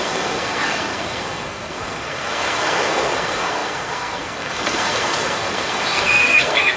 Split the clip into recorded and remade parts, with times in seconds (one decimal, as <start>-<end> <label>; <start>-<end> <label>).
0.0-6.8 remade